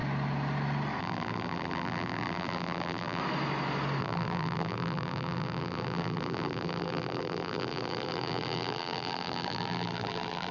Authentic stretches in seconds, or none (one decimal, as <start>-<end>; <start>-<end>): 0.0-1.0; 3.2-4.0

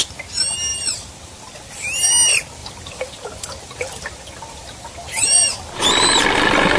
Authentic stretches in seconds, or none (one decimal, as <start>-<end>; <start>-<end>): 0.0-0.7; 1.7-2.6; 5.8-6.8

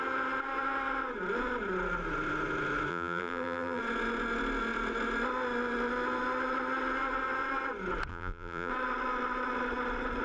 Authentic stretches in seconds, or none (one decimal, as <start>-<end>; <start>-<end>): 0.0-2.9; 3.8-8.1; 8.7-10.2

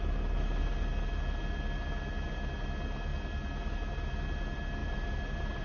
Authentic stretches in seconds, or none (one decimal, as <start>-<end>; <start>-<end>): 0.0-4.8

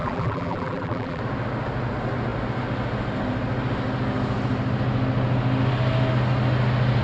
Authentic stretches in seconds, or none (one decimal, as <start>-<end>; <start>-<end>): 1.2-7.0

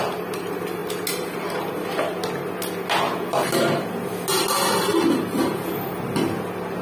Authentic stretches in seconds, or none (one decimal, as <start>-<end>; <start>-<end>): 0.0-6.8

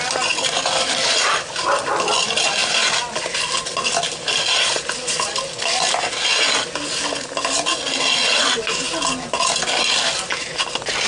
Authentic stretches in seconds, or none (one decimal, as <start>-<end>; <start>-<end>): 0.0-11.1